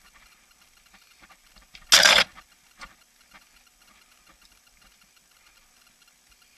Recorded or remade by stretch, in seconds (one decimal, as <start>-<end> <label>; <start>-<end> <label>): 0.0-6.6 recorded